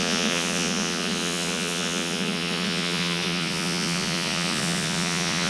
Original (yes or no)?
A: no